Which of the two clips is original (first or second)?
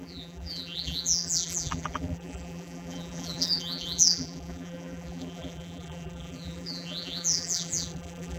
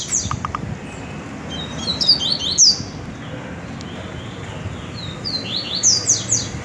second